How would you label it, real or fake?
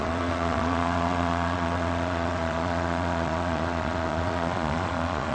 fake